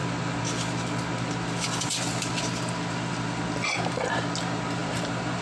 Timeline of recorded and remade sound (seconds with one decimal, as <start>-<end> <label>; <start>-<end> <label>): 0.0-4.8 recorded; 4.8-5.4 remade